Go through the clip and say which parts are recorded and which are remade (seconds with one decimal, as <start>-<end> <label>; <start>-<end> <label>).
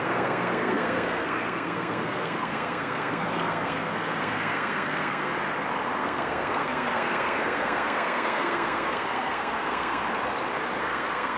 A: 0.0-5.3 remade; 5.3-6.0 recorded; 6.0-10.0 remade; 10.0-10.8 recorded; 10.8-11.4 remade